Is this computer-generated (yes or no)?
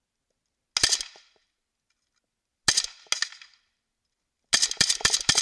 no